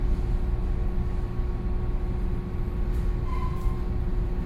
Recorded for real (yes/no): yes